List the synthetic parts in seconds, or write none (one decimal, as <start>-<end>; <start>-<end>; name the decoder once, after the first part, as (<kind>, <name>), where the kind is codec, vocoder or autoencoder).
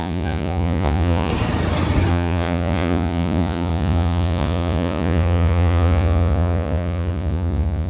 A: 0.0-1.3 (vocoder, Vocos); 2.1-7.9